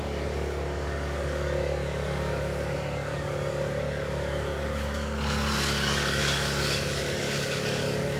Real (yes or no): no